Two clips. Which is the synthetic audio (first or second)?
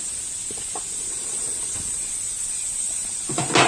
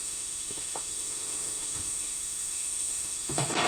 second